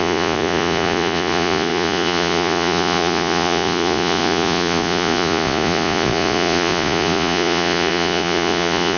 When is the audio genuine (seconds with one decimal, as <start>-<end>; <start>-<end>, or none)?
none